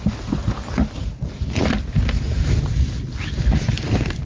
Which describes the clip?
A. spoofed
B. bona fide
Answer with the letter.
B